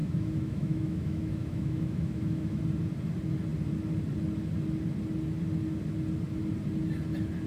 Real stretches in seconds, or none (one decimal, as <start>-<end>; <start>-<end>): 2.6-7.5